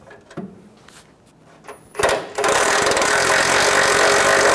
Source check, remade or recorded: recorded